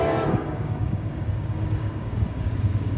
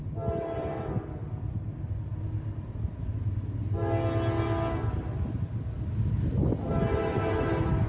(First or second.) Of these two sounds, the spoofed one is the first